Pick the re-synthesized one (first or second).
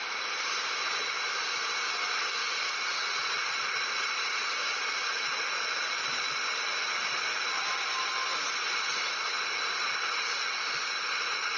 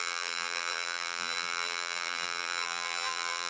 second